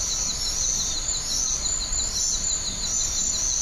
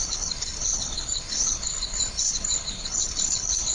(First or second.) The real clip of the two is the first